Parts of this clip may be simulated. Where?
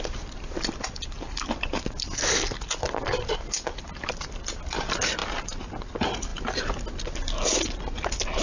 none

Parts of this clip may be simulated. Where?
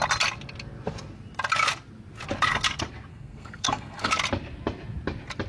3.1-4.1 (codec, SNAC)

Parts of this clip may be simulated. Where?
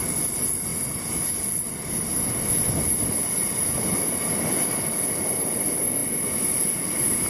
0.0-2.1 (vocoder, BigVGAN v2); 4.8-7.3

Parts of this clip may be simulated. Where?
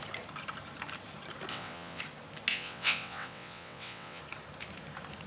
1.5-2.0 (vocoder, WaveNeXt); 2.5-4.2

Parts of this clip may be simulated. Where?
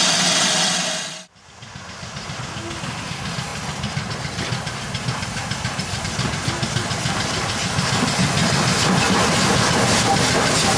none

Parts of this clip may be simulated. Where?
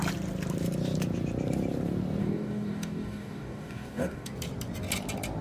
2.2-4.3 (codec, DAC)